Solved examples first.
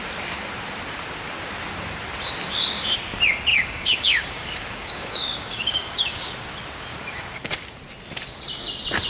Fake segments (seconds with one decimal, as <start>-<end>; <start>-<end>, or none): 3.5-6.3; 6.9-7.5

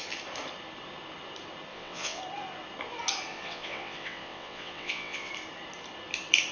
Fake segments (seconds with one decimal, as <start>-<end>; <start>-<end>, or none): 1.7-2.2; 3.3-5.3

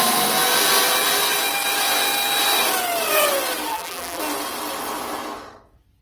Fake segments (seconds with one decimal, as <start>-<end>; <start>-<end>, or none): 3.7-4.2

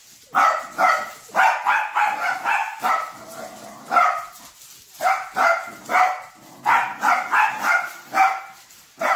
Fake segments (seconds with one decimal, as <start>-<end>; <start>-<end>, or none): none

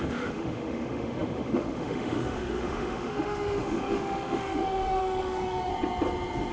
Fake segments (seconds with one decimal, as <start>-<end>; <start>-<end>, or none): 0.0-5.7

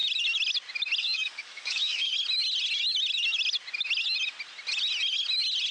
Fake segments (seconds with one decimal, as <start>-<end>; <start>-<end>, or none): 1.0-2.1

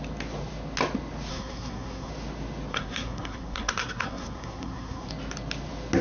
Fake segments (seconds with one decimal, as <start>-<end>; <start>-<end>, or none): 1.3-2.1; 2.7-5.1

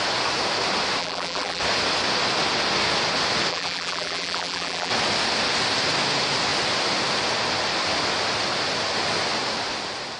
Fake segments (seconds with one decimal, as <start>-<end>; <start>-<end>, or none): 1.0-1.6; 3.5-4.9